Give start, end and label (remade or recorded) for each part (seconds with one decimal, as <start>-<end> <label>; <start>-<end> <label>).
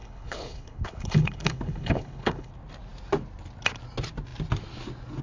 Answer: 0.0-2.5 remade; 2.5-5.2 recorded